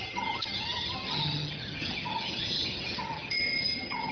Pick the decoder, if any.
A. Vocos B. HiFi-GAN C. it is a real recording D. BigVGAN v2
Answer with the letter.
B